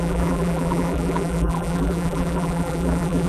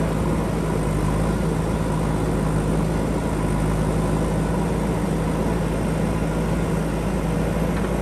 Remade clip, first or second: first